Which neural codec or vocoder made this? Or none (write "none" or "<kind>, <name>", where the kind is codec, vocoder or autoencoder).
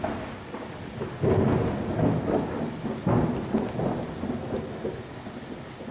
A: none